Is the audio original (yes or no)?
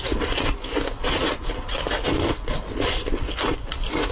yes